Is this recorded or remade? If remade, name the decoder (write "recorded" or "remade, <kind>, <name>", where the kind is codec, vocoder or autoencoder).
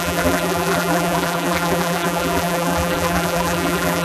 remade, vocoder, BigVGAN v2